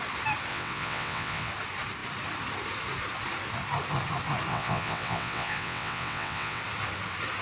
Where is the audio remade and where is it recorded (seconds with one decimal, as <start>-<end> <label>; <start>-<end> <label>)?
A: 0.0-0.5 recorded; 0.5-1.5 remade; 1.5-4.5 recorded; 4.5-6.6 remade; 6.6-7.4 recorded